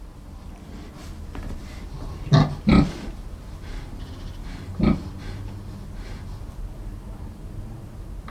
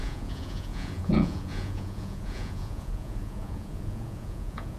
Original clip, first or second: first